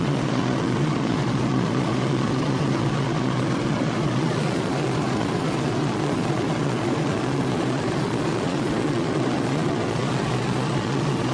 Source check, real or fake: fake